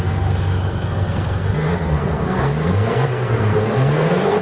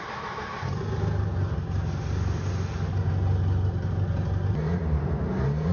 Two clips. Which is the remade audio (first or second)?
first